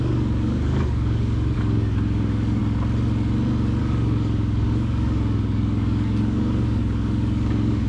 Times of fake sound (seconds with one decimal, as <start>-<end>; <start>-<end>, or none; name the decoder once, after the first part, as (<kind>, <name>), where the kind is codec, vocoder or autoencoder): 0.0-2.6 (codec, DAC); 3.8-7.9